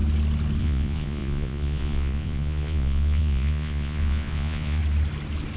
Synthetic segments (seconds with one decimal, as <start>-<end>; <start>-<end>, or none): 0.6-4.8